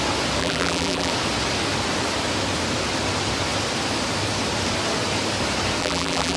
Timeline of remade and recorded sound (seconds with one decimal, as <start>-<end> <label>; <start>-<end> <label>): 0.0-0.4 recorded; 0.4-1.1 remade; 1.1-5.8 recorded; 5.8-6.4 remade